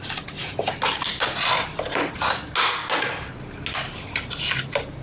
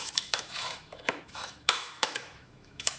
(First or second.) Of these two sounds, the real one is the first